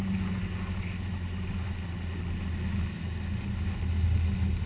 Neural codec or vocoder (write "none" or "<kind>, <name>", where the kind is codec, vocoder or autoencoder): none